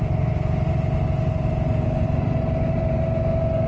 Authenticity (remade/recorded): recorded